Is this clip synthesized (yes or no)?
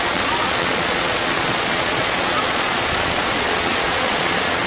yes